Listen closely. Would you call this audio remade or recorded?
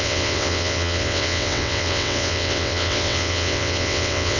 remade